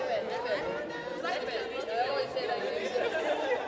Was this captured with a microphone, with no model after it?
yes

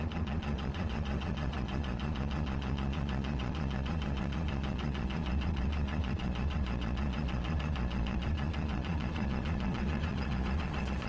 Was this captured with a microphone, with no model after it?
no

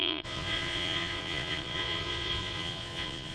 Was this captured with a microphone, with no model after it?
no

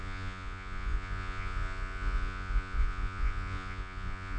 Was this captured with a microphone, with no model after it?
no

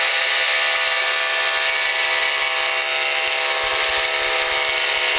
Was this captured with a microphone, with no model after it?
yes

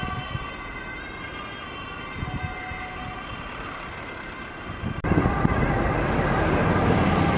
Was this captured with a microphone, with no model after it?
yes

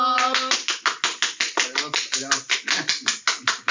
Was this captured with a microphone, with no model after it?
yes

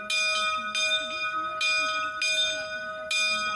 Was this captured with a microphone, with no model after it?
yes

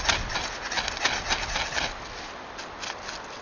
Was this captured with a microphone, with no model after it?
yes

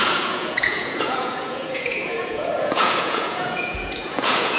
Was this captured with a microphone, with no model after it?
no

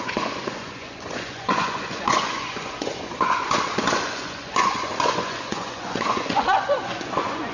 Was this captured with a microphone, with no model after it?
no